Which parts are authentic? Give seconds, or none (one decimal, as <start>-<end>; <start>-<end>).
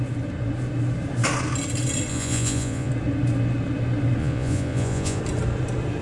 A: 0.0-2.1; 2.9-4.2; 5.2-6.0